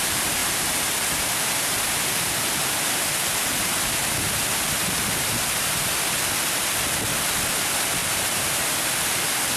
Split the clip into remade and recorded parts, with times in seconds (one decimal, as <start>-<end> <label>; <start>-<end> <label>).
0.0-8.0 recorded; 8.0-8.6 remade; 8.6-9.6 recorded